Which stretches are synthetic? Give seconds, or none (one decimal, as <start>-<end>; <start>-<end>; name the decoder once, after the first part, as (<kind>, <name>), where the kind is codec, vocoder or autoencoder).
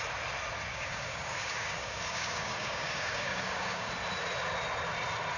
0.7-3.9 (codec, DAC)